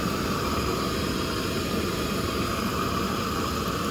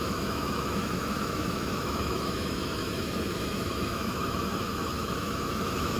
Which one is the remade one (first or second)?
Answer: second